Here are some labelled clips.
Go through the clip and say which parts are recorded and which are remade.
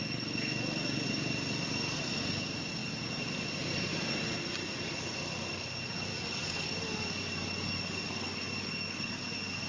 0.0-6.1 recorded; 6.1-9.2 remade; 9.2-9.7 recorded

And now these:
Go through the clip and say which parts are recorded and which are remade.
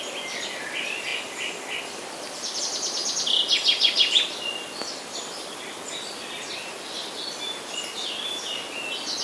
0.0-9.2 recorded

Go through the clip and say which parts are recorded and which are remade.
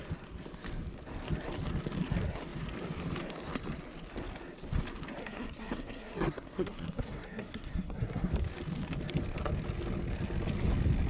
0.0-5.2 recorded; 5.2-8.3 remade; 8.3-11.1 recorded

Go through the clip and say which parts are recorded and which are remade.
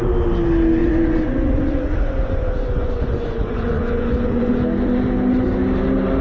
0.0-0.8 recorded; 0.8-4.5 remade; 4.5-6.2 recorded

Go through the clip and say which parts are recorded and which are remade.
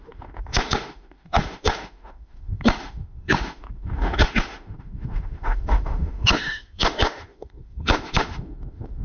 0.0-9.0 remade